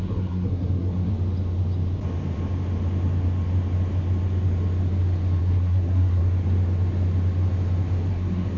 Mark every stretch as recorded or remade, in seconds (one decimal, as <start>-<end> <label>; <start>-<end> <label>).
0.0-1.1 remade; 1.1-5.4 recorded; 5.4-6.2 remade; 6.2-8.1 recorded; 8.1-8.6 remade